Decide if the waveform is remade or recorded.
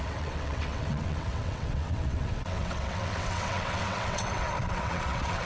remade